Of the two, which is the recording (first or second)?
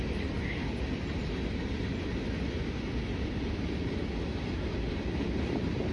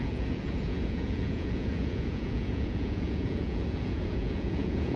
first